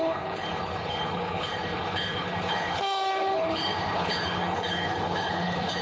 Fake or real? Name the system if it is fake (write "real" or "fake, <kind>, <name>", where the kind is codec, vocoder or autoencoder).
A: fake, codec, HILCodec